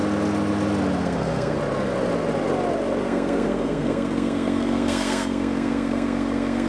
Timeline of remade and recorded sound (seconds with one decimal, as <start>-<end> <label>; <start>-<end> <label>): 0.0-1.0 recorded; 1.0-1.6 remade; 1.6-3.0 recorded; 3.0-6.7 remade